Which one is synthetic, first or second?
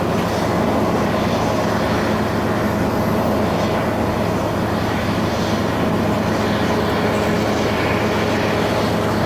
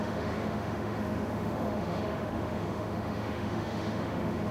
second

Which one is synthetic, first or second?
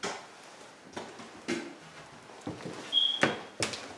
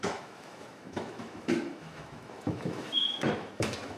second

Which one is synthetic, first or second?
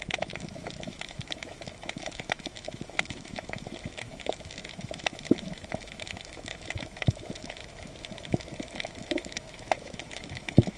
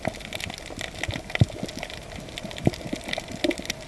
first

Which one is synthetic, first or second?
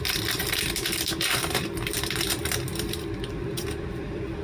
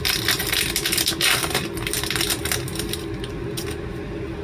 first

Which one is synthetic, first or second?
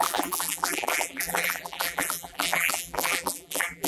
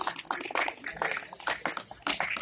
first